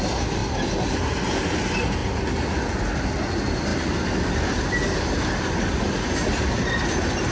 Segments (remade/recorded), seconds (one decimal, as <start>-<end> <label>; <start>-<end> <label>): 0.0-7.3 recorded